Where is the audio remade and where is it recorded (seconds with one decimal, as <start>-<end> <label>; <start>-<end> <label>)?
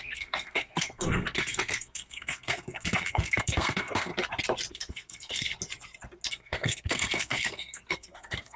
0.0-4.1 remade; 4.1-4.7 recorded; 4.7-5.5 remade; 5.5-6.3 recorded; 6.3-8.6 remade